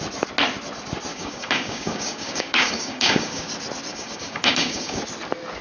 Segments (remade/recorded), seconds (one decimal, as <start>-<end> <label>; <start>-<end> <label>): 0.0-1.1 recorded; 1.1-3.5 remade; 3.5-3.9 recorded; 3.9-5.0 remade; 5.0-5.6 recorded